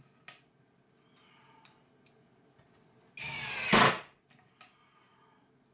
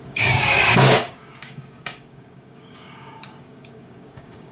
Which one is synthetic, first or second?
second